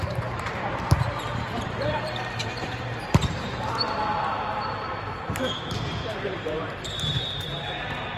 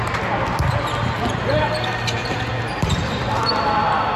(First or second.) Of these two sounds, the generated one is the first